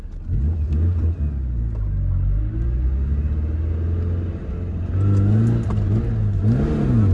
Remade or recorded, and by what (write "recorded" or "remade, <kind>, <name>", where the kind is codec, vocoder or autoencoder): recorded